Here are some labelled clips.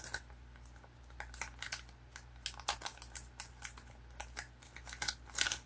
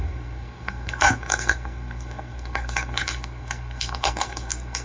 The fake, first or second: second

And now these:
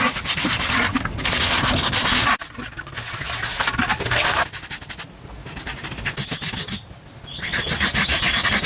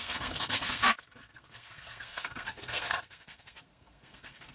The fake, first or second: second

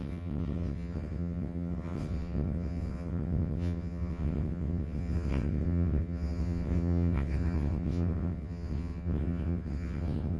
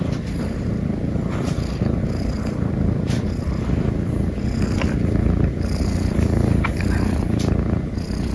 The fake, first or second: first